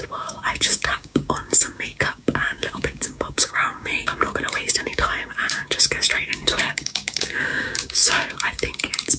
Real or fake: fake